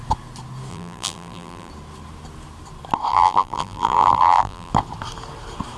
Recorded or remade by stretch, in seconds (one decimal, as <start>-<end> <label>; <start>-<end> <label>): 0.0-0.7 recorded; 0.7-1.7 remade; 1.7-3.1 recorded; 3.1-4.7 remade; 4.7-5.8 recorded